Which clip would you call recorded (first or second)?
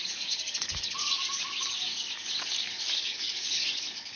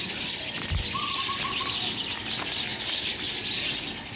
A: second